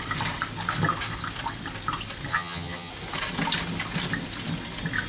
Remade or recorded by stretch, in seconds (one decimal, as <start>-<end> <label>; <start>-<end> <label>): 0.0-2.3 recorded; 2.3-2.9 remade; 2.9-5.1 recorded